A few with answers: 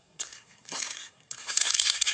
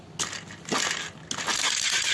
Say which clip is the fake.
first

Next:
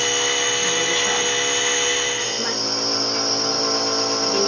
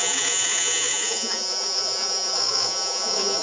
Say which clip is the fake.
second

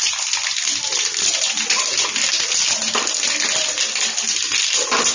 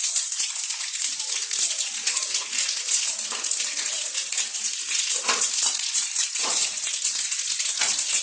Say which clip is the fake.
second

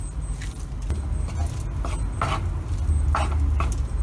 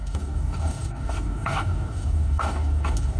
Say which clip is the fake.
second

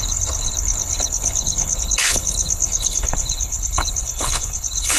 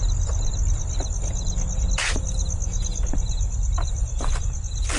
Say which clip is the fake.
first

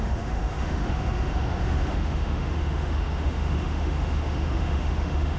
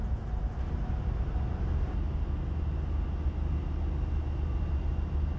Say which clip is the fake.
first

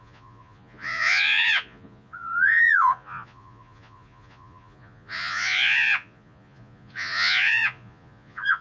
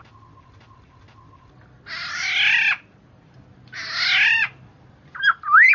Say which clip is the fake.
first